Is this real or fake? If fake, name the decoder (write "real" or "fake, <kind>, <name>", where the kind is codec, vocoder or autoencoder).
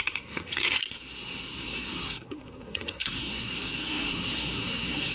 fake, codec, SNAC